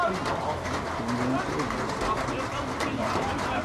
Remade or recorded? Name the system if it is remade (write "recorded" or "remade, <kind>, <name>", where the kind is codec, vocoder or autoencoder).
recorded